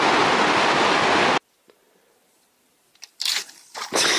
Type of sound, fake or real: real